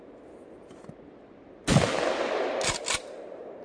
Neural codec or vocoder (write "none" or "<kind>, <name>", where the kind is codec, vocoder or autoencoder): none